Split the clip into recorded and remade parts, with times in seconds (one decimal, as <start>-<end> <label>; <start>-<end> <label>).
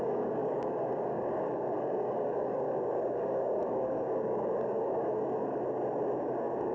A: 0.0-5.4 remade; 5.4-6.1 recorded; 6.1-6.7 remade